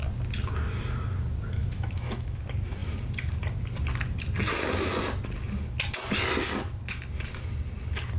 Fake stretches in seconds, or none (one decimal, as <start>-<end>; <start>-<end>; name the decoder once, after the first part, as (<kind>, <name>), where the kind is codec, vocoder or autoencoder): 1.6-2.4 (autoencoder, DAC-VAE)